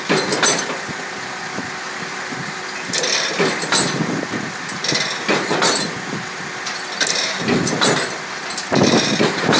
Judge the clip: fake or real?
real